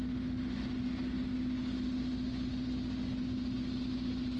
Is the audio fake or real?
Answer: real